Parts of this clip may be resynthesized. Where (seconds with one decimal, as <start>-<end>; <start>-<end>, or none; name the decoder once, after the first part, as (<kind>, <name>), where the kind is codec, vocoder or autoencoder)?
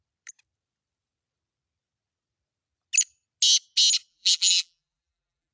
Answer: 4.1-5.5 (vocoder, BigVGAN v2)